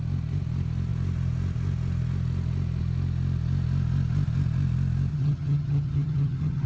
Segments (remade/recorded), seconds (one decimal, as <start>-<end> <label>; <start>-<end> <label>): 0.0-5.1 recorded; 5.1-6.7 remade